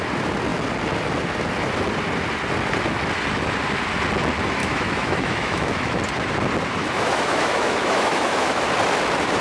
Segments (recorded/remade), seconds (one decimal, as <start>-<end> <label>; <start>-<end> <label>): 0.0-4.6 recorded; 4.6-6.0 remade; 6.0-6.8 recorded; 6.8-8.7 remade; 8.7-9.4 recorded